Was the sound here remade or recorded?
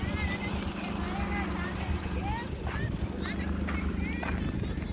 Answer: recorded